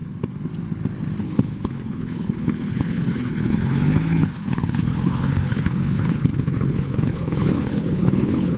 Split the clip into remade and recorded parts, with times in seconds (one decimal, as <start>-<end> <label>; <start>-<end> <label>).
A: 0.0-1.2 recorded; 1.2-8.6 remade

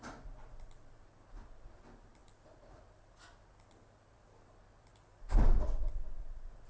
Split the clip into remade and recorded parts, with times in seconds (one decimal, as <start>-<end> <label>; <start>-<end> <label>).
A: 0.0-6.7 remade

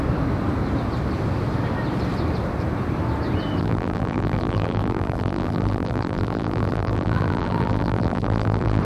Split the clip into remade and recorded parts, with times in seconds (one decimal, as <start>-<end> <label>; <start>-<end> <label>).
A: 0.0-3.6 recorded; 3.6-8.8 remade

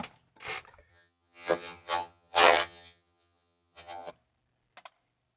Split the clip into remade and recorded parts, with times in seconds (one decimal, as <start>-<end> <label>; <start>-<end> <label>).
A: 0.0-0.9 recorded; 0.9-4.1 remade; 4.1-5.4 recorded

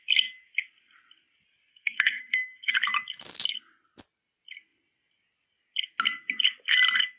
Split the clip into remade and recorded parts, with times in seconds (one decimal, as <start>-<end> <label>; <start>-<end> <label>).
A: 0.0-1.7 recorded; 1.7-2.7 remade; 2.7-7.2 recorded